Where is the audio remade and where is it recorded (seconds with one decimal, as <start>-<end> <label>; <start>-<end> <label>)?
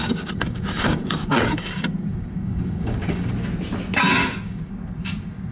0.0-3.3 remade; 3.3-4.2 recorded; 4.2-4.7 remade; 4.7-5.5 recorded